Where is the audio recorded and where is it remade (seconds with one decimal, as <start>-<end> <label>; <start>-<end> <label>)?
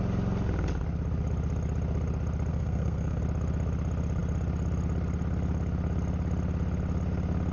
0.0-2.5 recorded; 2.5-3.2 remade; 3.2-7.5 recorded